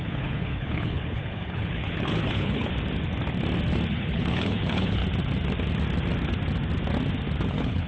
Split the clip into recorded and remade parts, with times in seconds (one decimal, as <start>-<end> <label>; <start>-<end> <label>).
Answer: 0.0-2.7 remade; 2.7-3.9 recorded; 3.9-5.0 remade; 5.0-7.5 recorded; 7.5-7.9 remade